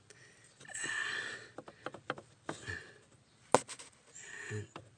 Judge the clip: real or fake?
real